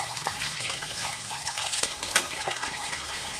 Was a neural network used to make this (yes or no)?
yes